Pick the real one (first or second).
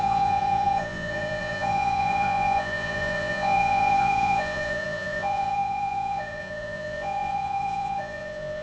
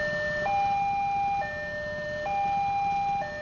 second